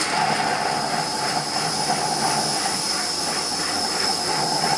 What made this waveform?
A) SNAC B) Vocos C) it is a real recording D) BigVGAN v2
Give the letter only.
C